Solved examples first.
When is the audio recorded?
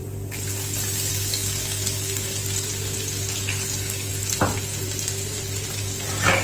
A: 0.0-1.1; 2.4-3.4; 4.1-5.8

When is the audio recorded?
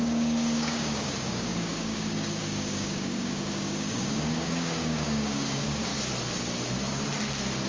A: 5.9-7.7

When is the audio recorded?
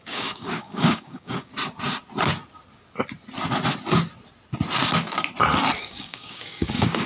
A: 1.5-5.8